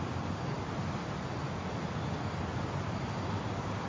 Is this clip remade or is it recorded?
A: recorded